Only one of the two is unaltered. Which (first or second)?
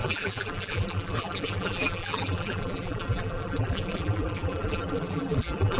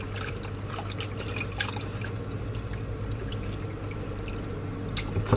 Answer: second